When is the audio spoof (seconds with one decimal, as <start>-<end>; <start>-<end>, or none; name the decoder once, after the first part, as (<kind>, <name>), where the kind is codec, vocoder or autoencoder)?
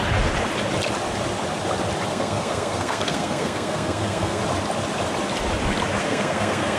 2.1-4.4 (codec, SNAC); 6.0-6.8